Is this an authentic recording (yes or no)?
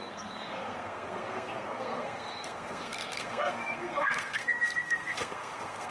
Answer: no